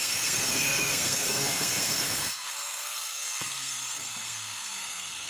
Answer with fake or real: fake